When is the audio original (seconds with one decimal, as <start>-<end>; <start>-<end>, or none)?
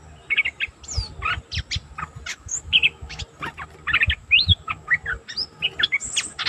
0.0-2.3; 3.2-4.2; 4.9-6.5